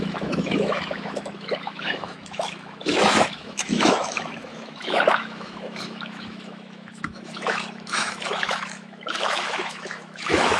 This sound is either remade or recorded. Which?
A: remade